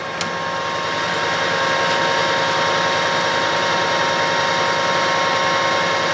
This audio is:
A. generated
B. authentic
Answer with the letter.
B